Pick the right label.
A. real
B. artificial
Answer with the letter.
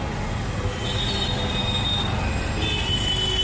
A